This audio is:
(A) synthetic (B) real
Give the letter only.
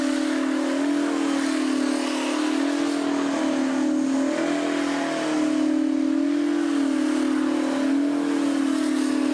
B